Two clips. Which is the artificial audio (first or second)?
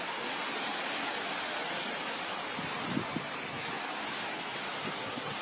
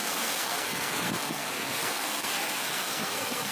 second